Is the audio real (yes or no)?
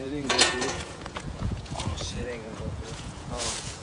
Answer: no